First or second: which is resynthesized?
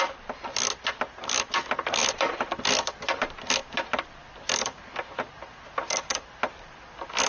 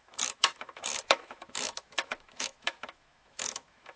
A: second